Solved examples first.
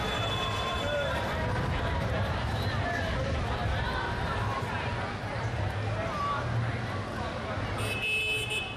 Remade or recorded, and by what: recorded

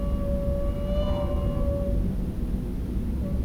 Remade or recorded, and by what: recorded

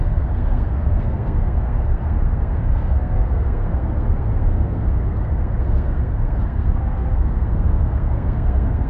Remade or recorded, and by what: remade, codec, SNAC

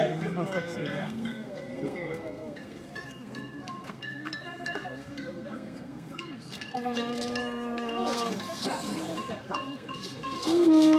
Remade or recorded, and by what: remade, codec, SNAC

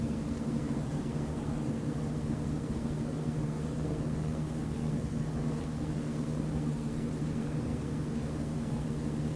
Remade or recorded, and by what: remade, codec, SNAC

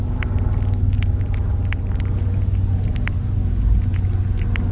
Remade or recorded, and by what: recorded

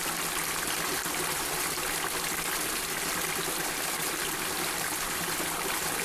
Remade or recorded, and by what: recorded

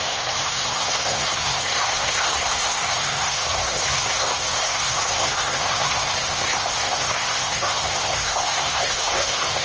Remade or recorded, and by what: remade, codec, SNAC